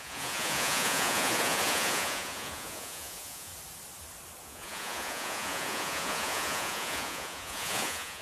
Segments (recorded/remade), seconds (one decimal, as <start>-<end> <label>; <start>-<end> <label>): 0.0-3.5 remade; 3.5-4.4 recorded; 4.4-8.2 remade